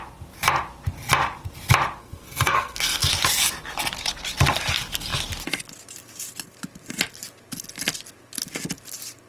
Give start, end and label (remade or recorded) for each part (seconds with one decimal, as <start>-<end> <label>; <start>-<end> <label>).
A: 0.0-2.0 recorded; 2.0-3.1 remade; 3.1-9.3 recorded